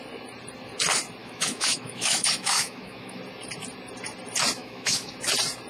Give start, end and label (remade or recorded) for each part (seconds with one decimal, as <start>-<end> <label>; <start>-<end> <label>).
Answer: 0.0-1.2 recorded; 1.2-3.2 remade; 3.2-4.6 recorded; 4.6-5.1 remade; 5.1-5.7 recorded